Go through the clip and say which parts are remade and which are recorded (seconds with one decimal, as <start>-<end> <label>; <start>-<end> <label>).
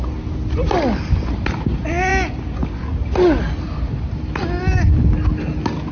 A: 0.0-5.9 recorded